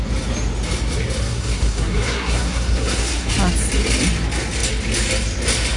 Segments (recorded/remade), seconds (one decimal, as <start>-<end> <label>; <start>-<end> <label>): 0.0-1.2 recorded; 1.2-3.3 remade; 3.3-5.8 recorded